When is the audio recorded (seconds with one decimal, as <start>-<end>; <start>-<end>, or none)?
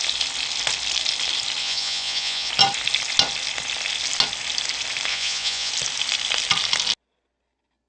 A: 0.0-1.6; 2.5-5.1; 5.7-7.9